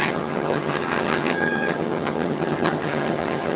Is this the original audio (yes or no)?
no